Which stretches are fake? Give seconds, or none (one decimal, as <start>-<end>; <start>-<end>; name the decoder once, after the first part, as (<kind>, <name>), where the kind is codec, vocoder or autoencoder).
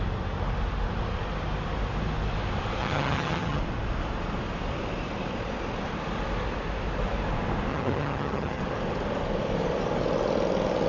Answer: 2.8-3.6 (vocoder, HiFi-GAN); 7.7-8.6